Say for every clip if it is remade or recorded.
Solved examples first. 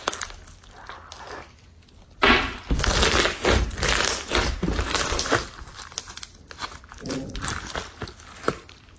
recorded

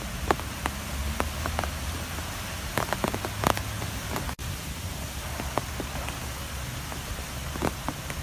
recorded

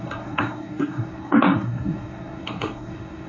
remade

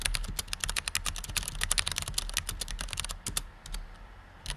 recorded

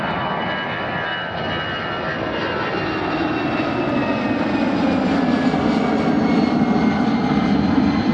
recorded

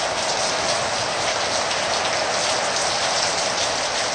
recorded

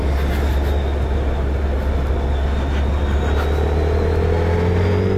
recorded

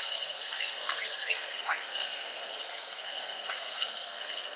remade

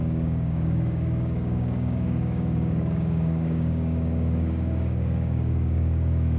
remade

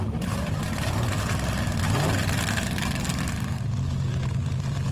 recorded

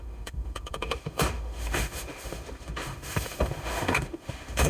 remade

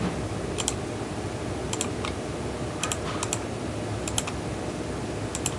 recorded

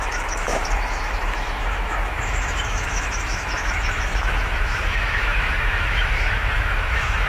remade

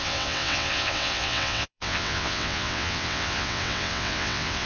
remade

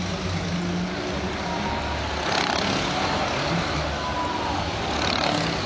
recorded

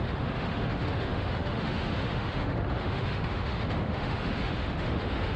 remade